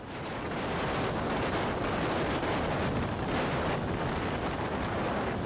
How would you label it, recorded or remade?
recorded